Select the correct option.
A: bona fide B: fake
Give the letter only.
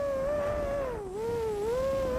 A